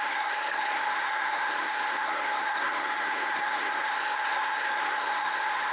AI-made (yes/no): yes